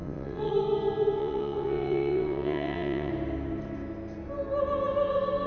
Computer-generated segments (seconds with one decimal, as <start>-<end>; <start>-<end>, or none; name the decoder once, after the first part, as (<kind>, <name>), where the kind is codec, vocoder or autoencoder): 0.0-0.5 (vocoder, WaveNeXt); 1.2-3.1